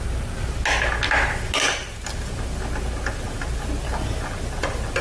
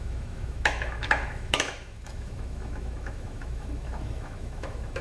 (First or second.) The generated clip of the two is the second